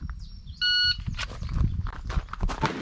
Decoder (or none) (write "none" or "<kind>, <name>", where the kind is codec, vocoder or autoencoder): none